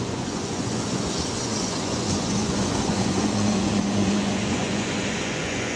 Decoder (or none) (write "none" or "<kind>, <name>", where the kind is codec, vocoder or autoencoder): vocoder, Vocos